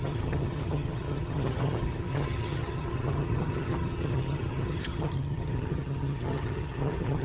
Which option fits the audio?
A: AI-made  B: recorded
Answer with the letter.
A